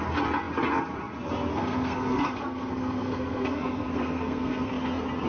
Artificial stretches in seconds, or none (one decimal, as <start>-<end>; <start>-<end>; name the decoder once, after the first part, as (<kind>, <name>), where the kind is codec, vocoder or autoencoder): 1.5-4.7 (codec, SNAC)

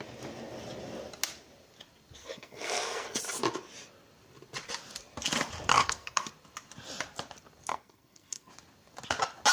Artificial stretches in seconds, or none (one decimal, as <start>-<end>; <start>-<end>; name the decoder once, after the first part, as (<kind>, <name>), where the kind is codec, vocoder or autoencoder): 2.2-3.2 (codec, SNAC); 5.7-6.3; 7.7-8.5

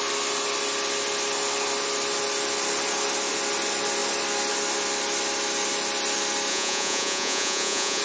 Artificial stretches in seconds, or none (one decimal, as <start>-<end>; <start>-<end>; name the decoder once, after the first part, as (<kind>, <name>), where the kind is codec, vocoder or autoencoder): 6.5-8.0 (vocoder, Vocos)

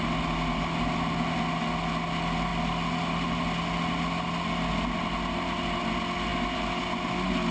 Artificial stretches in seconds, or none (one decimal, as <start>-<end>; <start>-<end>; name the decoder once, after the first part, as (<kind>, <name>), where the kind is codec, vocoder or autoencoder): none

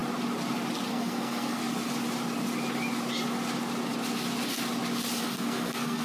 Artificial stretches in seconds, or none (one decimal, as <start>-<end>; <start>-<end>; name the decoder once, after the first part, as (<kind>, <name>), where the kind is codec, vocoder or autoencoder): 0.9-1.6 (codec, SNAC); 5.2-6.0

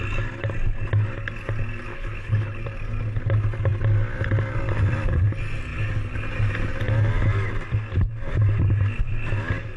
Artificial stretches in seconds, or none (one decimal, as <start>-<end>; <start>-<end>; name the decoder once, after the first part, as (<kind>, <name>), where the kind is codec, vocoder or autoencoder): 1.9-2.6 (codec, HILCodec)

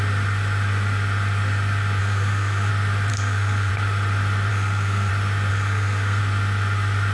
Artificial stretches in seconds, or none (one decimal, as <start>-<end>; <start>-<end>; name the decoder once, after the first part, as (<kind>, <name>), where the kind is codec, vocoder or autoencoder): 2.0-2.7 (codec, SNAC); 3.1-3.7; 4.5-5.1; 5.5-6.2